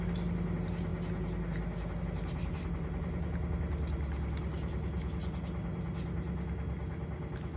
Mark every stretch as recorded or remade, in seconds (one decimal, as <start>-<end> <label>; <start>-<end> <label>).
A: 0.0-7.6 recorded